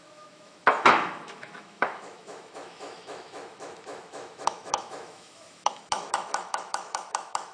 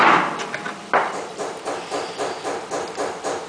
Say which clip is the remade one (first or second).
first